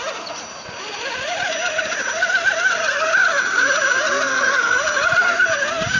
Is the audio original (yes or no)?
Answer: yes